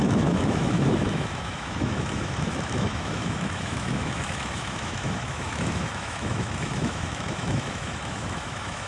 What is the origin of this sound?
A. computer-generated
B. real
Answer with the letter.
A